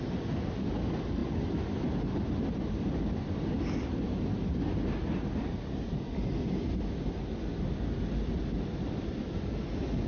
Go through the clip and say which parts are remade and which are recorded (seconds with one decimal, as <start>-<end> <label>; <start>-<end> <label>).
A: 0.0-10.1 recorded